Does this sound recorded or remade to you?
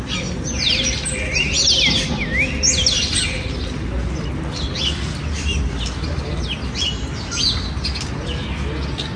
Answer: recorded